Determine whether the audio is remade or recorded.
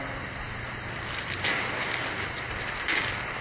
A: recorded